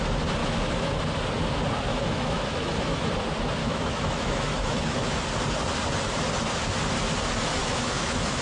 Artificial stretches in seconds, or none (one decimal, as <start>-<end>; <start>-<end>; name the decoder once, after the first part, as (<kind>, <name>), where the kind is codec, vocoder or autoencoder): 0.4-1.0 (autoencoder, DAC-VAE); 1.9-3.1; 3.6-5.2; 7.6-8.4